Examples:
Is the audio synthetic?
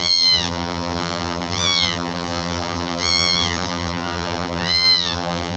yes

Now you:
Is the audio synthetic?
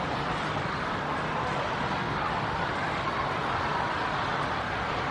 no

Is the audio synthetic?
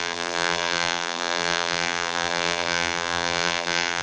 yes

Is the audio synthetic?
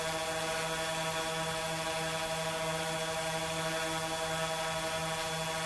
no